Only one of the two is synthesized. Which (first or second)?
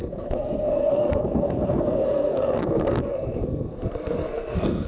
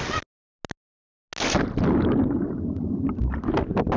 first